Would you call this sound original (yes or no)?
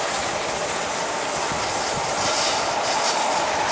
yes